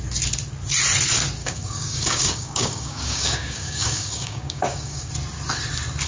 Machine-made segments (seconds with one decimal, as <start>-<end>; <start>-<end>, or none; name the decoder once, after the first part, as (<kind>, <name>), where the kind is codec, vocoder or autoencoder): 1.4-5.1 (codec, DAC)